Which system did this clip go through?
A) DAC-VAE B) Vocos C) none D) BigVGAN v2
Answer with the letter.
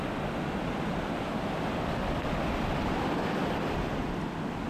C